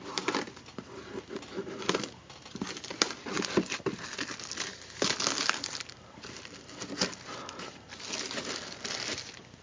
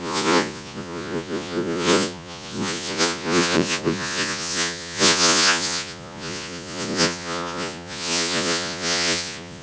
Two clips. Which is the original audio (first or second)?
first